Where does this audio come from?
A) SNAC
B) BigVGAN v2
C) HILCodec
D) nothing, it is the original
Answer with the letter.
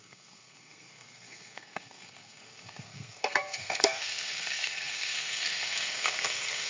A